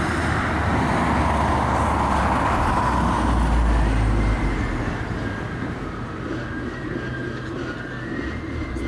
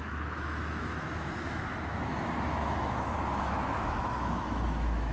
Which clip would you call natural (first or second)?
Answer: first